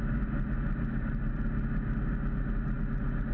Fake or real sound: real